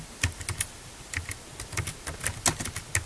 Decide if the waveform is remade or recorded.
recorded